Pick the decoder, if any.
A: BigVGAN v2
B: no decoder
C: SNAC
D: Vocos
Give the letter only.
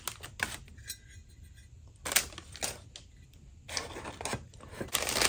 B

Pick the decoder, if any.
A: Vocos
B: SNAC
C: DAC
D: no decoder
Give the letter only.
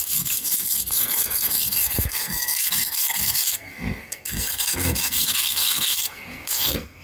B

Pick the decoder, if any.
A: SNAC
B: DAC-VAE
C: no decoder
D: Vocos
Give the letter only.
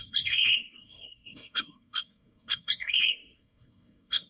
A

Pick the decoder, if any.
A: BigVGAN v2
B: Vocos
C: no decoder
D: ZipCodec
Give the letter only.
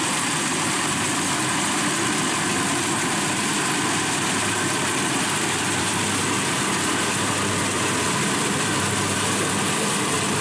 A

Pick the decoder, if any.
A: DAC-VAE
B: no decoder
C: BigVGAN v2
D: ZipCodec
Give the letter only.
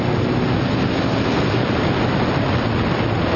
B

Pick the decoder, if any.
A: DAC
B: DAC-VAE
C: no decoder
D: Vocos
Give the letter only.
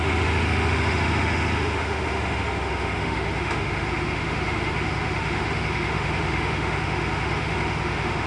B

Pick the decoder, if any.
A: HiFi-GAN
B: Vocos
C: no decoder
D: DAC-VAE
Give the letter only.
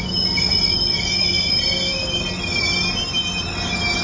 C